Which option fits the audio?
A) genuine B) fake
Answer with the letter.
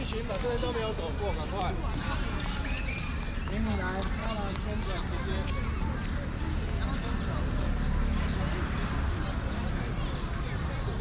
A